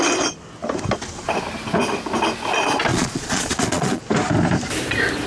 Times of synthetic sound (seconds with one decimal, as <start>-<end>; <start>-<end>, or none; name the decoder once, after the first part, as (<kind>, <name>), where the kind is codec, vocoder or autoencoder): 2.9-4.0 (vocoder, Vocos)